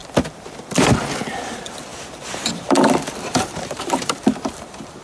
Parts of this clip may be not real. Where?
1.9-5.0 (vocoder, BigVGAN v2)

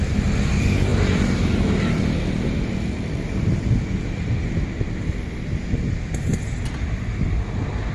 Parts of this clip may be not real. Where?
none

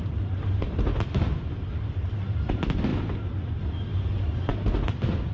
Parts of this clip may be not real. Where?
none